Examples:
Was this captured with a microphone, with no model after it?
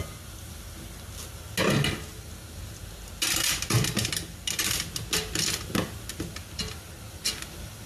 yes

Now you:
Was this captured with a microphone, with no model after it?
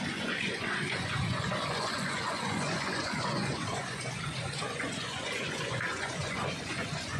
no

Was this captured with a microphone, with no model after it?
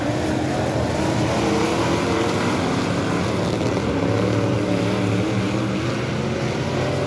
yes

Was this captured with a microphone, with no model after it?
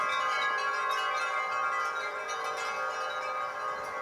yes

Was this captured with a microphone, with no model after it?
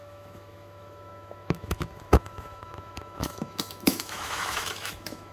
no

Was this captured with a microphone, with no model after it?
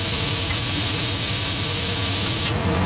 no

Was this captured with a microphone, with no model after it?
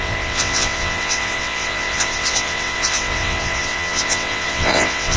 no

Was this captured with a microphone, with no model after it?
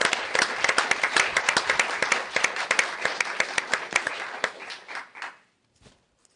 yes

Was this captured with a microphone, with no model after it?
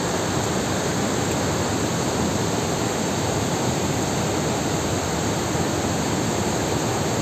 yes